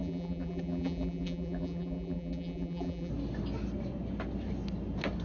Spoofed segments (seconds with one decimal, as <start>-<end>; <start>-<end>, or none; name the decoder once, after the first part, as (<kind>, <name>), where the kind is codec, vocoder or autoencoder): 0.0-3.1 (vocoder, BigVGAN v2)